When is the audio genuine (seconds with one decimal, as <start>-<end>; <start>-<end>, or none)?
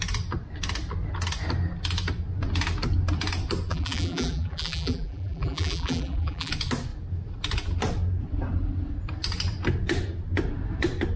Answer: 0.0-3.7; 6.5-11.2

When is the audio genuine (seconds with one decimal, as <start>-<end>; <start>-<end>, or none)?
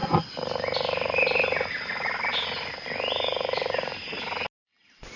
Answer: 0.0-5.2